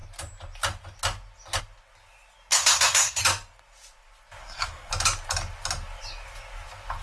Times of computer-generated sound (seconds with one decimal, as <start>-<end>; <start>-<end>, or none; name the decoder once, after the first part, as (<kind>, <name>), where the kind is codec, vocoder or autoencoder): 2.5-3.2 (codec, SNAC); 4.4-4.9